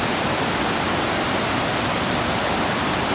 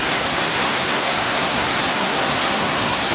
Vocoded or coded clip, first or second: second